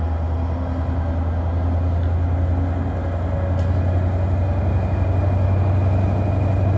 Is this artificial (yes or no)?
no